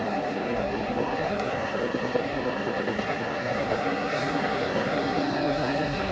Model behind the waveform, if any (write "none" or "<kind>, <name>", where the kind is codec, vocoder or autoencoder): codec, SNAC